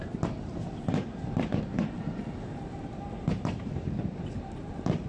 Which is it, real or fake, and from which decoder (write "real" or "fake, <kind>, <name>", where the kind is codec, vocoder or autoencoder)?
fake, vocoder, BigVGAN v2